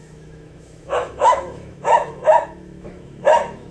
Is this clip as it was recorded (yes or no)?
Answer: no